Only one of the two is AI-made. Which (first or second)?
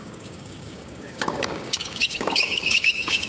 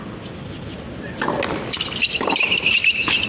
first